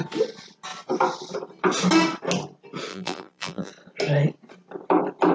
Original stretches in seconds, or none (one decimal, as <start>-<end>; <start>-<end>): 0.0-2.9; 3.7-5.3